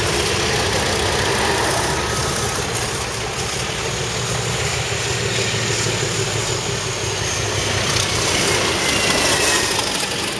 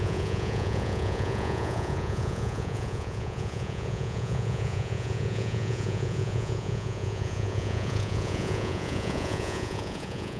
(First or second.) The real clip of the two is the first